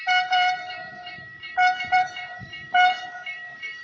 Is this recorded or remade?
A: remade